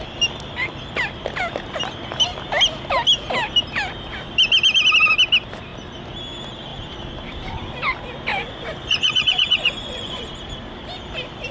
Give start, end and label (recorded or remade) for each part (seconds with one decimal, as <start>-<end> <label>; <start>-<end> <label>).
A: 0.0-8.3 recorded; 8.3-10.2 remade; 10.2-11.5 recorded